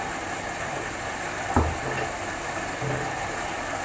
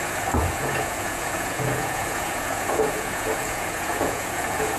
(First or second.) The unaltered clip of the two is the first